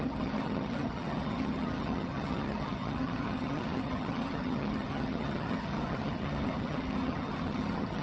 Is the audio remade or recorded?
remade